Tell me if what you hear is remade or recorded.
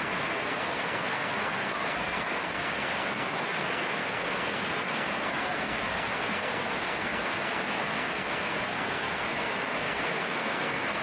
remade